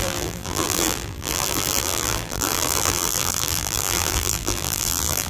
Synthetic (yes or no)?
yes